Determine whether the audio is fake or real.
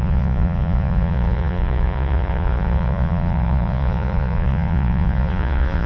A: fake